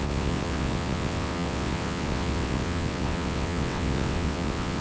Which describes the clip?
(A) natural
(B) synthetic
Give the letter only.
B